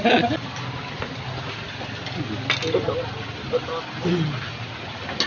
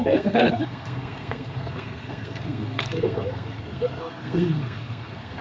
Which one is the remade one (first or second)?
second